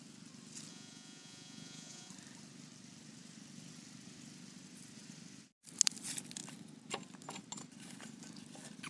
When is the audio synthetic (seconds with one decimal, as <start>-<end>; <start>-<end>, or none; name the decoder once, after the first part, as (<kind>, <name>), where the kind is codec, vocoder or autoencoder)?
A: 0.7-2.1 (vocoder, Vocos)